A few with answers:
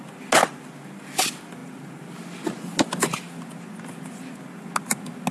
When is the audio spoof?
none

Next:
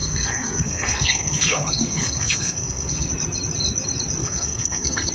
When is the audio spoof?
0.0-3.1; 4.2-5.1